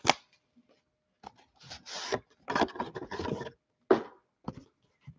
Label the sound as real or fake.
real